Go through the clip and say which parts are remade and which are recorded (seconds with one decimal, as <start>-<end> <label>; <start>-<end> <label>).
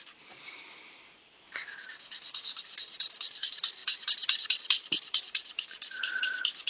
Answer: 0.0-1.6 remade; 1.6-2.6 recorded; 2.6-6.7 remade